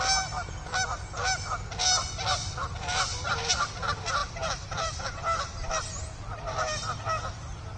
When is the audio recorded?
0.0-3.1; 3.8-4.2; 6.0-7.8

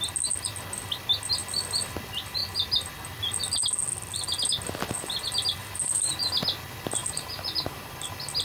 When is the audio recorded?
0.0-5.6; 6.3-7.0; 7.9-8.4

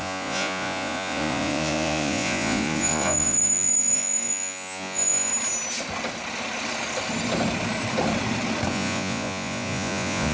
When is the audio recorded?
5.3-8.7

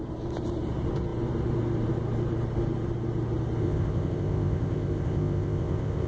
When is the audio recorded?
0.0-3.6

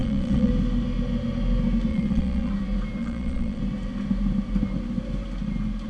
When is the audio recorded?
0.5-1.9; 2.5-3.0; 3.6-5.9

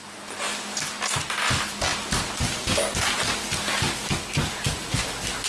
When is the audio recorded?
0.0-5.5